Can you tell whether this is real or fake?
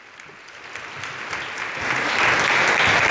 real